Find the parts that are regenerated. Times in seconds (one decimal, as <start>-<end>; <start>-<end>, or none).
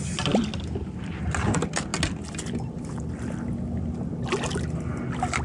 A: none